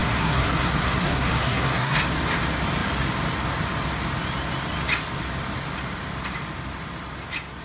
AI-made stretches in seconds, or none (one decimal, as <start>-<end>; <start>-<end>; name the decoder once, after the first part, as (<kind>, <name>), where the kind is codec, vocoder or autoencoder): 0.0-2.0 (codec, SNAC)